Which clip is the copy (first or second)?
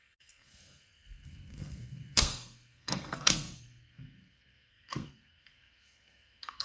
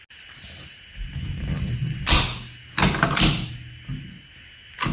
first